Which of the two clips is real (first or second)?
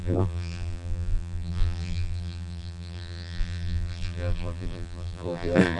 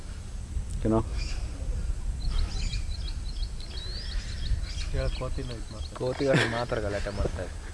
second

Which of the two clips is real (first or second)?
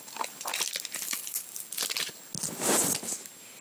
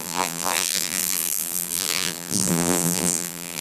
first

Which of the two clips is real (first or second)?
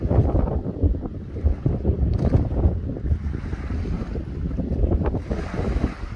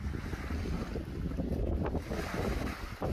second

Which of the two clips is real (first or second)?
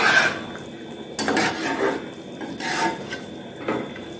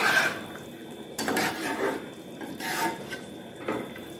first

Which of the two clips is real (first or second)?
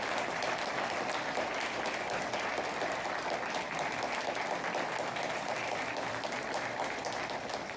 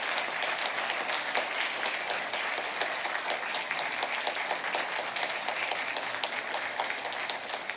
second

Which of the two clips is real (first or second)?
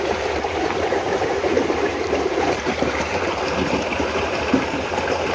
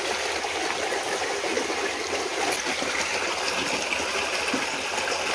second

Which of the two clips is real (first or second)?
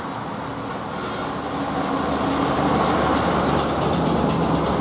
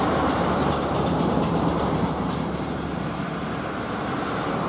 first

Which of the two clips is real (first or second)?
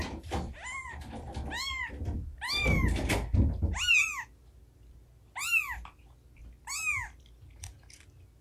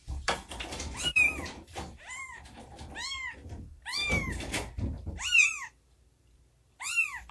first